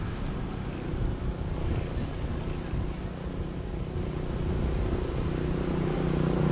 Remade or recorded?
recorded